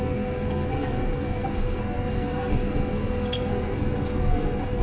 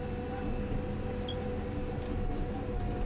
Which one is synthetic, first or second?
first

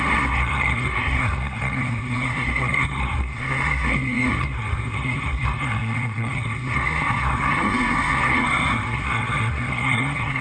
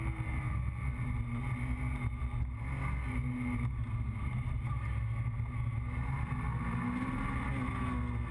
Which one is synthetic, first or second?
first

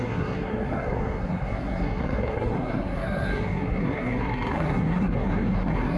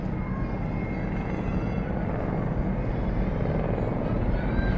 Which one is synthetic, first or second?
first